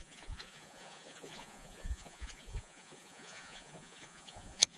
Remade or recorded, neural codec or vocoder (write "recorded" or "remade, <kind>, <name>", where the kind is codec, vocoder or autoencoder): remade, vocoder, Vocos